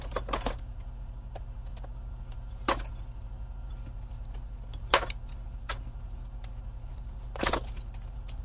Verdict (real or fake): real